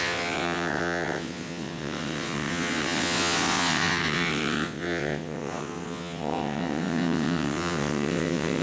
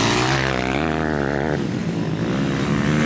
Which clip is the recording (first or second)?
second